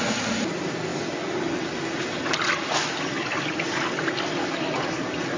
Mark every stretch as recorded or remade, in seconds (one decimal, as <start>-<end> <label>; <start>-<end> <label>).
0.0-5.4 recorded